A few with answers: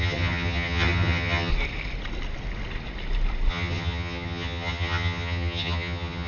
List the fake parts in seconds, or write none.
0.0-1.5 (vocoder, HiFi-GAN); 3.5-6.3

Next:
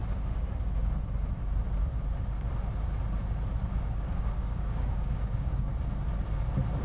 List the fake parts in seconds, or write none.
3.8-5.7 (codec, DAC)

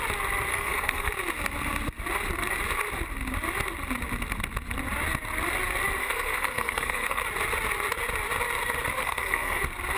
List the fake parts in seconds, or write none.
0.5-1.1 (codec, SNAC); 6.0-7.2; 9.0-9.6

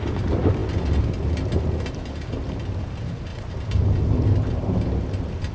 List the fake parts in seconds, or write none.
none

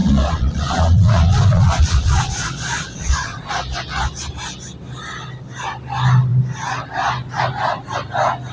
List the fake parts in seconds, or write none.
0.0-3.5 (vocoder, Vocos)

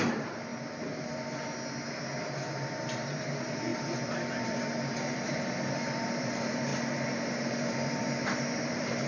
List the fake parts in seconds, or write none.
0.0-0.5 (vocoder, BigVGAN v2); 3.0-3.7; 4.4-9.1

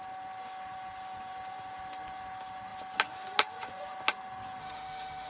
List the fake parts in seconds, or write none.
4.6-5.3 (autoencoder, DAC-VAE)

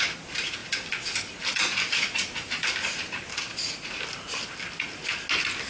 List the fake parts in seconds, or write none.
3.3-4.0 (vocoder, Vocos)